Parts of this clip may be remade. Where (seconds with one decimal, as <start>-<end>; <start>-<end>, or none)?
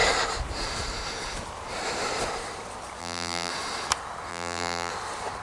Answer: 3.0-3.5; 4.3-4.9